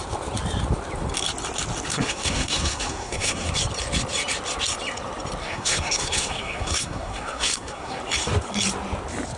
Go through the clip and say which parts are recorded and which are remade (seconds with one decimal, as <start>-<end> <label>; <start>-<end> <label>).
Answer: 0.0-1.9 recorded; 1.9-3.5 remade; 3.5-5.4 recorded; 5.4-8.0 remade; 8.0-9.4 recorded